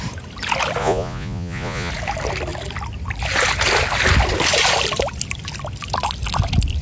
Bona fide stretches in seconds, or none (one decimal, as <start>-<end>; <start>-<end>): 0.0-0.8; 1.9-6.8